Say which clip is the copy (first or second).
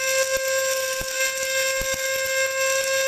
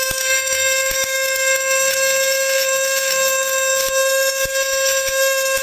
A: second